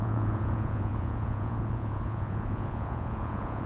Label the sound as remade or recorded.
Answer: remade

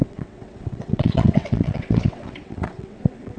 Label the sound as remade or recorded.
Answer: remade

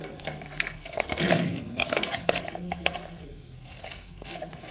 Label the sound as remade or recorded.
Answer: remade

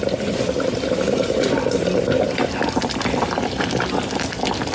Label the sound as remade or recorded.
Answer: recorded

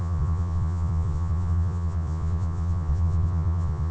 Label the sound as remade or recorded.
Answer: remade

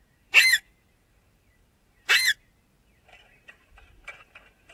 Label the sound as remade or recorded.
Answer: remade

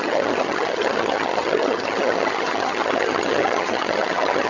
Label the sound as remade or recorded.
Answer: remade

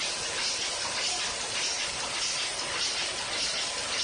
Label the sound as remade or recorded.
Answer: recorded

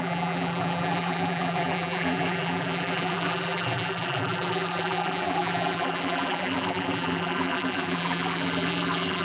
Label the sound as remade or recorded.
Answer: remade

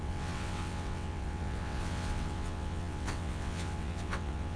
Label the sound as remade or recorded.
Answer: remade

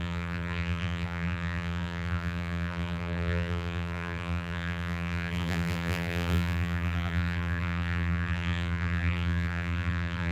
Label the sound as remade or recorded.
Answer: remade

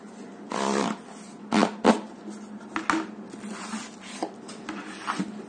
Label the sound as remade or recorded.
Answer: recorded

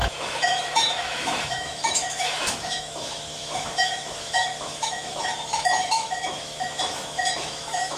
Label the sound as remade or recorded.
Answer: remade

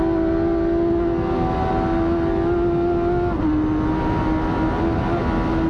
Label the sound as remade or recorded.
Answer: recorded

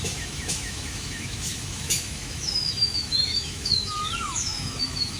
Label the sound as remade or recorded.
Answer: remade